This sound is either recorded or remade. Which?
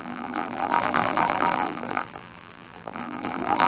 remade